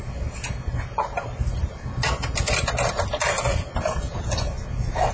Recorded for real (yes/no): yes